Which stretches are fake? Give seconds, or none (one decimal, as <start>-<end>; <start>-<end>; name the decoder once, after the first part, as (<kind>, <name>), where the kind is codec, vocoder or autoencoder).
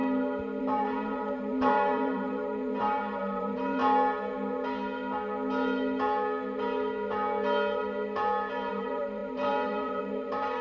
0.6-3.8 (vocoder, BigVGAN v2); 8.7-10.6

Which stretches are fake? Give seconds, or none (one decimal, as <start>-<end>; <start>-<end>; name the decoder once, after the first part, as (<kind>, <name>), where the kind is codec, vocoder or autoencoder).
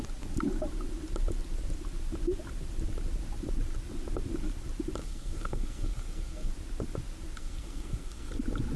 5.0-6.5 (codec, SNAC); 7.4-8.3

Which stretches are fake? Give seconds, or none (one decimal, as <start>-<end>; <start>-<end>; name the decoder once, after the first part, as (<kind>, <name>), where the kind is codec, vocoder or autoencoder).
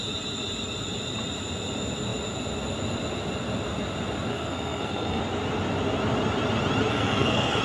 4.3-5.2 (codec, SNAC); 6.9-7.6